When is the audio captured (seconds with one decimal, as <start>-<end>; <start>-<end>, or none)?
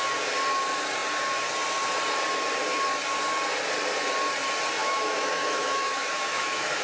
0.0-4.8